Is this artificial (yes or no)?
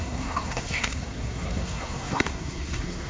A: yes